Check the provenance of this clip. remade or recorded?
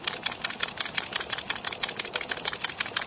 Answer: recorded